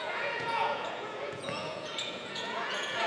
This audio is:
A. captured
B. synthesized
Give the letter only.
B